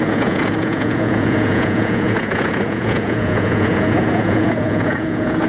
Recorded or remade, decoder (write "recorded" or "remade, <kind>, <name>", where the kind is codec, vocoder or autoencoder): remade, vocoder, Vocos